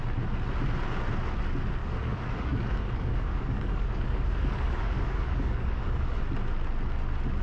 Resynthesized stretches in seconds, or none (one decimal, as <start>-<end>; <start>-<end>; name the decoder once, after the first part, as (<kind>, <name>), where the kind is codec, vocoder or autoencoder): 1.8-6.2 (codec, DAC)